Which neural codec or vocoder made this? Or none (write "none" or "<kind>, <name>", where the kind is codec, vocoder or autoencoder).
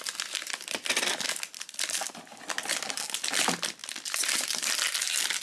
none